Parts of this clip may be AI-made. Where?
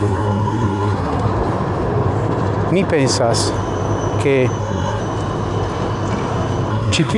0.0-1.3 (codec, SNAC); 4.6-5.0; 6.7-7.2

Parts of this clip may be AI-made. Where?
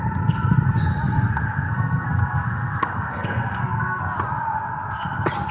0.9-4.0 (codec, SNAC)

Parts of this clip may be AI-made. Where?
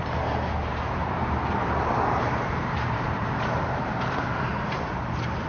0.7-4.0 (vocoder, BigVGAN v2)